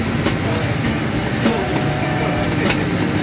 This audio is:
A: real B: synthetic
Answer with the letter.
A